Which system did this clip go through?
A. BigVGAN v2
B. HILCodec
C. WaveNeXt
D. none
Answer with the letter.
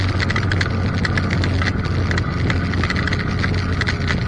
D